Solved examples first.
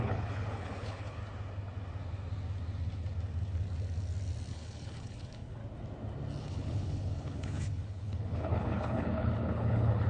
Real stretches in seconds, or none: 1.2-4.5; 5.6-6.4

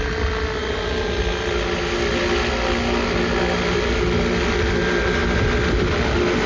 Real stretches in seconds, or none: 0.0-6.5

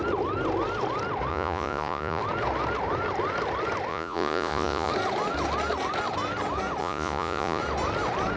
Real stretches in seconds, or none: 0.0-1.3; 2.2-3.9; 4.9-6.8; 7.6-8.4